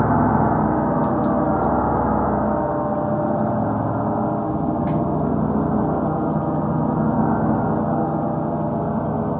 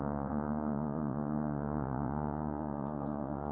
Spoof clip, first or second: second